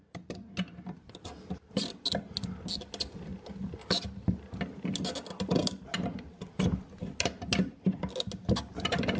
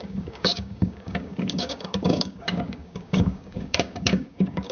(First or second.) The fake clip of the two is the second